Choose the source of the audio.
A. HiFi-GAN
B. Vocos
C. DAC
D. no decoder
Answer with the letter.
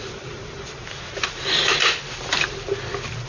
D